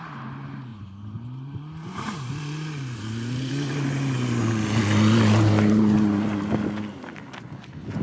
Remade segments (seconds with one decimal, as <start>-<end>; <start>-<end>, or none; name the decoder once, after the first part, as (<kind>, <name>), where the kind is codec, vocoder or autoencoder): 0.7-3.5 (vocoder, BigVGAN v2)